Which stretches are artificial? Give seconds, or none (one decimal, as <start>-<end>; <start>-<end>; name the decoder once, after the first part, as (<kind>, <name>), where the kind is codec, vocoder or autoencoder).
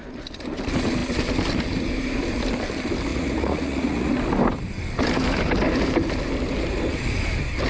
3.1-4.1 (vocoder, Vocos)